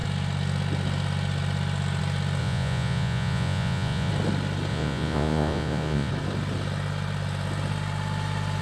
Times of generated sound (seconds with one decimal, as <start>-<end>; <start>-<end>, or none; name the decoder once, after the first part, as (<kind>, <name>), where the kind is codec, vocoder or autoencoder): 2.4-4.1 (vocoder, Vocos); 4.7-6.1